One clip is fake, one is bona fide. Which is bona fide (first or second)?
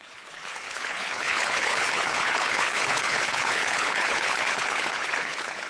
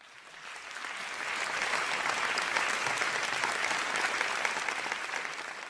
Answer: second